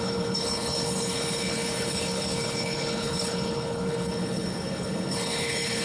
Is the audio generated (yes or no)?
yes